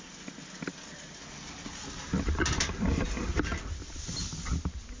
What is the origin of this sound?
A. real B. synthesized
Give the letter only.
A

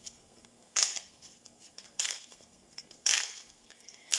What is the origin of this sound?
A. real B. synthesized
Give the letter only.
B